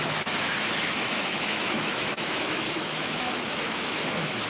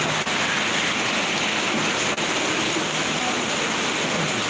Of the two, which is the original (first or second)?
second